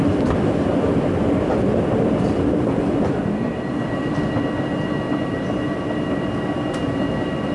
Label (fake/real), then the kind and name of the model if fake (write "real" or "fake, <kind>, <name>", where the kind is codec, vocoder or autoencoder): real